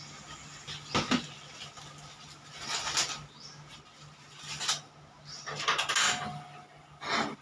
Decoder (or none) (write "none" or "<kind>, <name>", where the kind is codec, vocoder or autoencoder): none